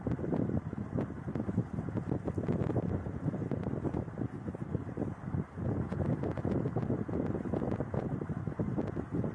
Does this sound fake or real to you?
real